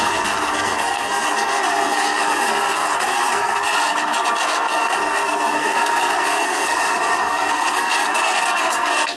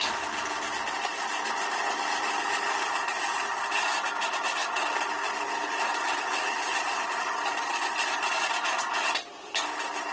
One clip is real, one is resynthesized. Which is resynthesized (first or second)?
first